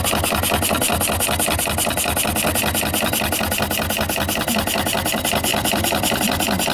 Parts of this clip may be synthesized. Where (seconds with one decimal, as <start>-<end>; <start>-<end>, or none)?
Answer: 5.5-6.2